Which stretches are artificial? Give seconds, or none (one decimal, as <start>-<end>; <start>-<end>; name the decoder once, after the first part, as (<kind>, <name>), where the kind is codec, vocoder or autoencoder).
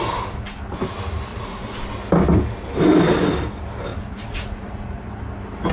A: 1.3-1.8 (vocoder, Vocos); 3.9-5.2